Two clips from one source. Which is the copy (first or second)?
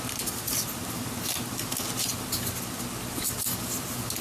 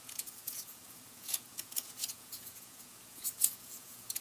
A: second